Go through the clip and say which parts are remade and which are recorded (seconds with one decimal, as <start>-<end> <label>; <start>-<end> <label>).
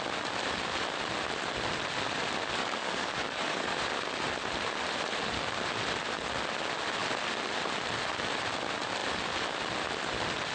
0.0-2.6 recorded; 2.6-3.8 remade; 3.8-10.5 recorded